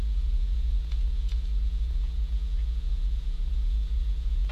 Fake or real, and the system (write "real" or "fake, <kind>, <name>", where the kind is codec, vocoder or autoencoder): fake, vocoder, Vocos